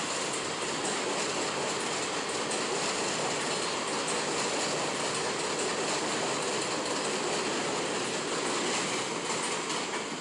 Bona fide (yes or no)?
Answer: yes